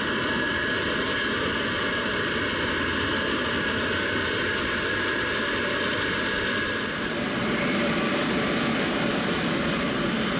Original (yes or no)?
no